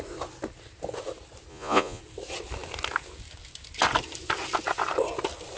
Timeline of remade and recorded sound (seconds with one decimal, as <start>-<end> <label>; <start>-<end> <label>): 0.0-1.5 recorded; 1.5-2.0 remade; 2.0-5.6 recorded